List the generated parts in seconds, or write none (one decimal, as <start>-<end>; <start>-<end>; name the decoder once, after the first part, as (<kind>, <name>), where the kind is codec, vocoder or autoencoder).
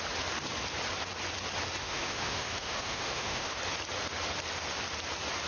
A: 1.8-3.6 (autoencoder, DAC-VAE)